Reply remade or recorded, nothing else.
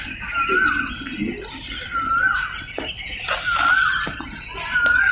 recorded